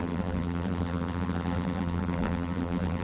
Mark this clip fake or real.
fake